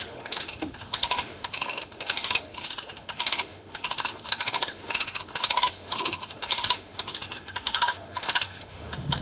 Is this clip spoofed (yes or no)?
yes